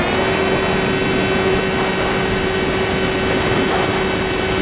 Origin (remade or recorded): recorded